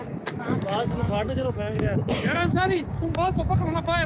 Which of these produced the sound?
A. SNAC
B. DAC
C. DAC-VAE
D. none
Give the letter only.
B